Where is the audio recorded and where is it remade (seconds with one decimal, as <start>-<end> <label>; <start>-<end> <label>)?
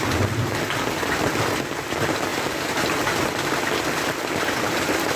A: 0.0-2.3 recorded; 2.3-3.1 remade; 3.1-5.2 recorded